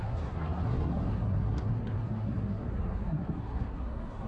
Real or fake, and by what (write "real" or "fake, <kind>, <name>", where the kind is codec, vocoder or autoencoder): fake, codec, SNAC